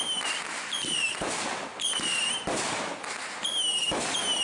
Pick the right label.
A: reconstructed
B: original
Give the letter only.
B